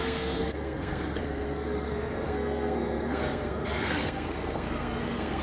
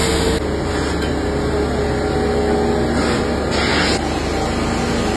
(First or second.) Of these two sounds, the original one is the second